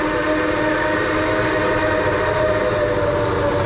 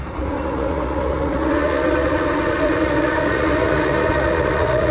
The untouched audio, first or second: first